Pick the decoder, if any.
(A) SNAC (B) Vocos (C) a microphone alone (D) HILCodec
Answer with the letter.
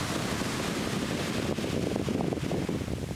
C